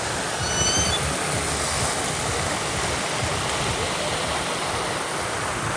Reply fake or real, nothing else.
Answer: real